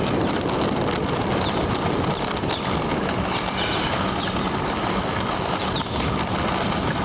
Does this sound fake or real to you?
real